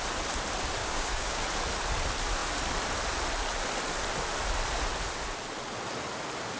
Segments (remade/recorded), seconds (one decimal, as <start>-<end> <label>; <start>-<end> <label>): 0.0-0.8 recorded; 0.8-1.4 remade; 1.4-6.6 recorded